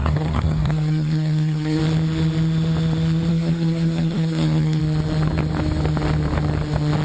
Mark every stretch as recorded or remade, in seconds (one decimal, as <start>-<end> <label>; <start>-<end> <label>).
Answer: 0.0-1.8 remade; 1.8-3.3 recorded; 3.3-4.8 remade; 4.8-7.0 recorded